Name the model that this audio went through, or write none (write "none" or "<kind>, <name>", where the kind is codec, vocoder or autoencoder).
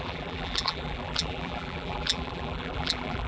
vocoder, BigVGAN v2